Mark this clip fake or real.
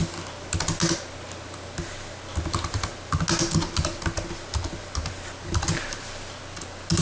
real